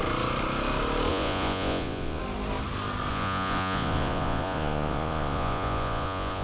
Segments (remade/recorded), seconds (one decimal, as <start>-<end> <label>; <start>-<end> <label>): 0.0-1.1 recorded; 1.1-2.2 remade; 2.2-3.1 recorded; 3.1-6.4 remade